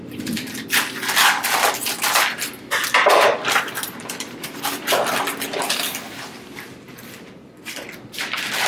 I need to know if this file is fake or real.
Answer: fake